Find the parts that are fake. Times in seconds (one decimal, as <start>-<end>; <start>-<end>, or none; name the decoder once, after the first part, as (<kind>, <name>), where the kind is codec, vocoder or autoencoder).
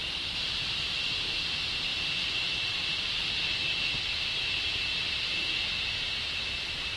none